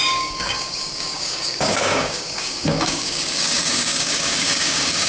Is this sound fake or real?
fake